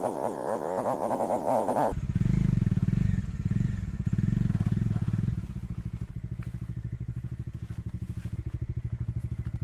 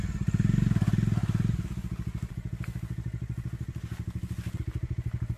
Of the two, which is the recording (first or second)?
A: second